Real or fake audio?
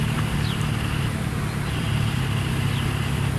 real